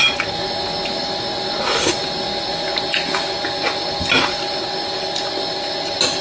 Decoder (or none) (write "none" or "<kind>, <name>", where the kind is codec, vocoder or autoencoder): none